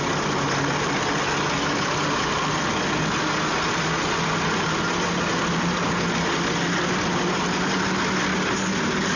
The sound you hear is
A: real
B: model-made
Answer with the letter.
A